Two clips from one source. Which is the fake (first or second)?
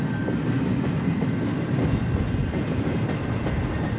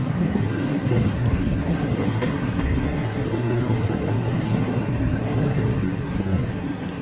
second